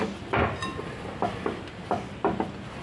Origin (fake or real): real